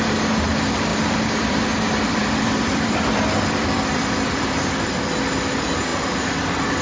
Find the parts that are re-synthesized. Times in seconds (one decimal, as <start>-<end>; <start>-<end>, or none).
0.9-4.7